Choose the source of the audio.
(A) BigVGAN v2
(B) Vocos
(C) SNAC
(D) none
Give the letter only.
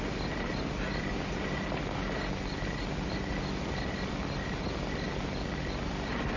D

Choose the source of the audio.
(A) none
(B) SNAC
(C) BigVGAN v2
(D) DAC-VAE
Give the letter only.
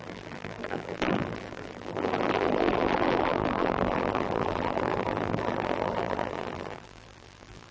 C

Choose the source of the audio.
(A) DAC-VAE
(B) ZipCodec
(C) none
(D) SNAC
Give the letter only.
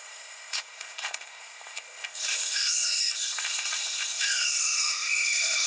B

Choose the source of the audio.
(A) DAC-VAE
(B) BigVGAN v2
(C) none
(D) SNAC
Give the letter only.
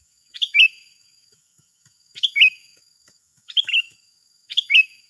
A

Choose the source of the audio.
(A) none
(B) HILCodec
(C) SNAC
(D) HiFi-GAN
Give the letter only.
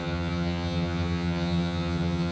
D